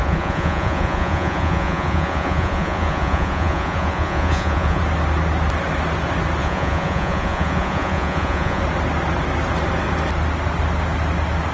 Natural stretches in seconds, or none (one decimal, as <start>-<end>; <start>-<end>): 4.8-6.4; 8.6-11.5